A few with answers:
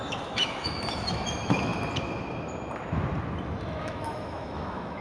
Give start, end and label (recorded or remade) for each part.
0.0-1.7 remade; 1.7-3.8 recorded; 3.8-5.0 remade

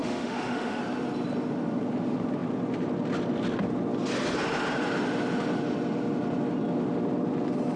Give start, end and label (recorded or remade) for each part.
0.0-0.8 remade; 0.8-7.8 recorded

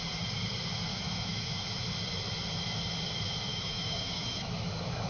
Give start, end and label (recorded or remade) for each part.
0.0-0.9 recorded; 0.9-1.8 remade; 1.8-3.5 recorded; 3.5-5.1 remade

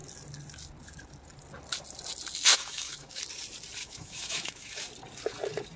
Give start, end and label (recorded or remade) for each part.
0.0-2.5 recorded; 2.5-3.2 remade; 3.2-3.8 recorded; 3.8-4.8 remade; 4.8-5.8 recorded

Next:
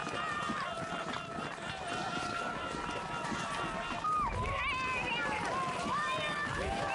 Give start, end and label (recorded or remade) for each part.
0.0-6.9 recorded